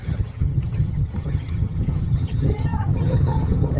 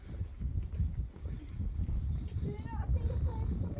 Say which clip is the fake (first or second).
first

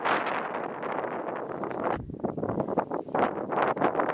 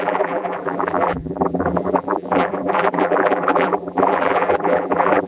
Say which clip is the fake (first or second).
second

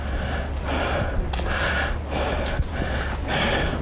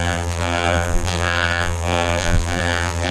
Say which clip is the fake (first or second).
second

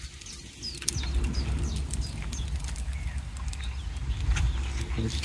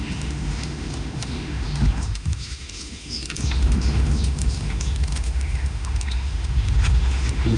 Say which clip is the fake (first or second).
second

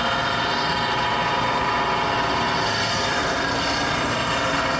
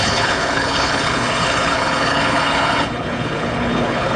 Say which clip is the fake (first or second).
second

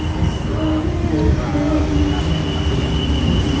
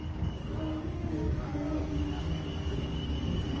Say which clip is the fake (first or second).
second